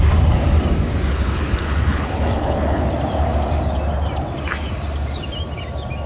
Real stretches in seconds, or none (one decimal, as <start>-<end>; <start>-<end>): 0.0-1.1; 2.8-6.1